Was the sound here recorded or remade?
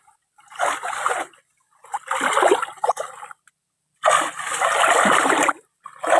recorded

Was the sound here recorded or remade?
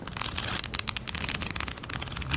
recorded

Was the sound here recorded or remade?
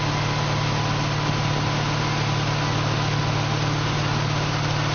recorded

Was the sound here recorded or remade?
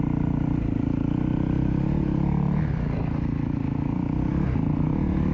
recorded